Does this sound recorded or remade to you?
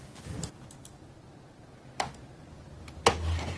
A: recorded